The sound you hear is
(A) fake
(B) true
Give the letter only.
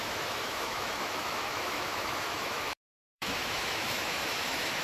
A